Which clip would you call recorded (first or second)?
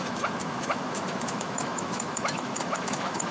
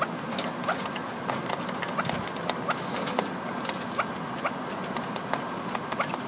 second